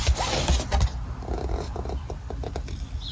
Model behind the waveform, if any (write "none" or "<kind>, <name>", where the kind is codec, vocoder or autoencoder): none